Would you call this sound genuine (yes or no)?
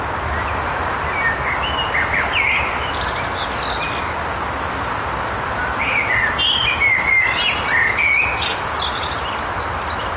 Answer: yes